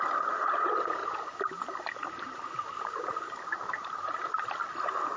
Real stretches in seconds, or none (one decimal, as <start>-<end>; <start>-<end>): 0.0-1.0; 4.1-5.2